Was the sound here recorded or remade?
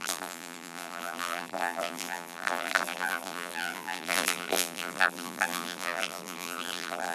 remade